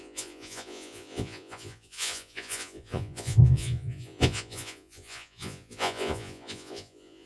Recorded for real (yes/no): no